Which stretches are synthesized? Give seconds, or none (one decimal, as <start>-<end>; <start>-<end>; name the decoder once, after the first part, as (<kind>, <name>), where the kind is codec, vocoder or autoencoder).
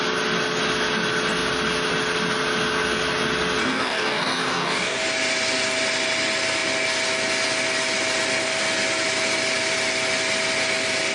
3.6-5.0 (codec, DAC)